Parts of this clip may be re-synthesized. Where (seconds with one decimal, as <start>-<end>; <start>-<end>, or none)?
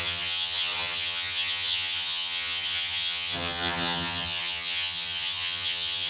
0.0-6.1